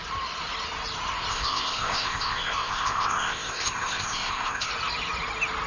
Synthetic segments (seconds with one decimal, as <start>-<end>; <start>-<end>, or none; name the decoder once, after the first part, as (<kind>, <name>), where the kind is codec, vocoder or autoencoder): 1.3-4.7 (codec, ZipCodec)